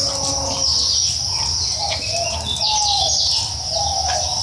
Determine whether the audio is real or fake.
real